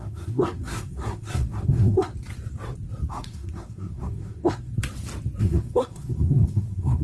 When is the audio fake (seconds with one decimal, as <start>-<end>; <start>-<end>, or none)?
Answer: 0.0-2.1; 3.1-4.7; 5.4-7.0